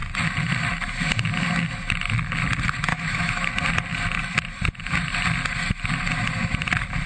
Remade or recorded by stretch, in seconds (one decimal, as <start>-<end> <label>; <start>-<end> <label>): 0.0-2.9 recorded; 2.9-3.5 remade; 3.5-7.1 recorded